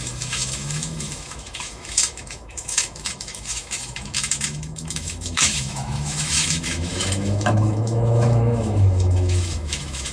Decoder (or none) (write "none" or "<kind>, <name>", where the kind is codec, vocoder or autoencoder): autoencoder, DAC-VAE